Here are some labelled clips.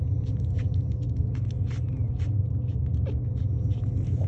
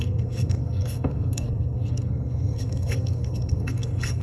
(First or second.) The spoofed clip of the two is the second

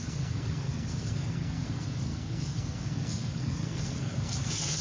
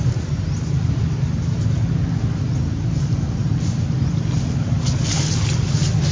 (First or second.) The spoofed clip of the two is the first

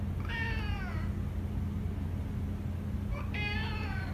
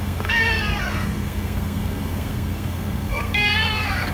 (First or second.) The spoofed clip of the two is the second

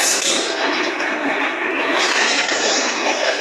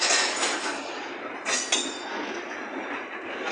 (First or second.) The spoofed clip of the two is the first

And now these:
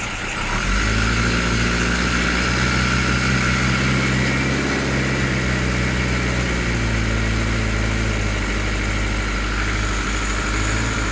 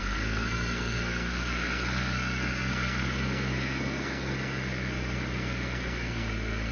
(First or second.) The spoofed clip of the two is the second